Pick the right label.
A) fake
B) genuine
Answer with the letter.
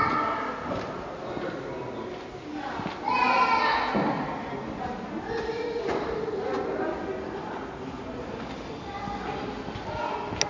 B